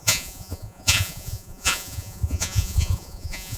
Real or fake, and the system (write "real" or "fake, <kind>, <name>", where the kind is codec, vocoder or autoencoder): fake, vocoder, Vocos